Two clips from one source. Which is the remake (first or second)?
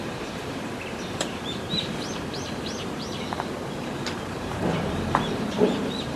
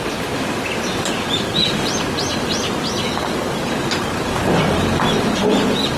first